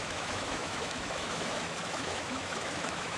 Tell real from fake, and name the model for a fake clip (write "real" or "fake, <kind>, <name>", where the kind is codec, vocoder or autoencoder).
fake, autoencoder, DAC-VAE